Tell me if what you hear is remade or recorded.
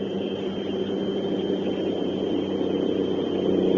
recorded